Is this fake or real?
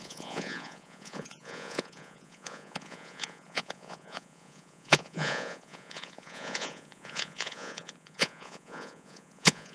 fake